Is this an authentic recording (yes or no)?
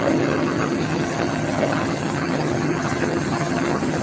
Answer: no